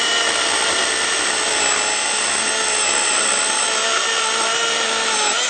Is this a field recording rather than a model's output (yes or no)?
yes